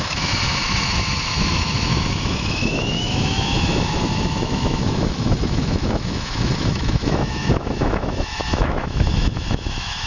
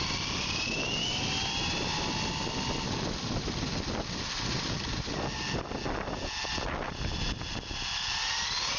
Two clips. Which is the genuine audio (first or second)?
second